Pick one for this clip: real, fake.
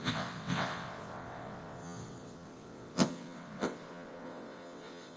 fake